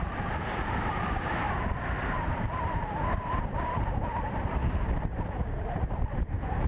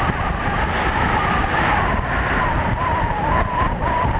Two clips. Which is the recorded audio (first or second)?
second